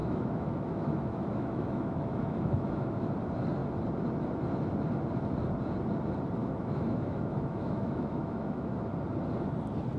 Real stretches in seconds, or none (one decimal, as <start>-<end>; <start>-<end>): 3.1-6.4; 8.9-10.0